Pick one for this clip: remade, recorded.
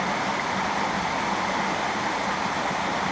recorded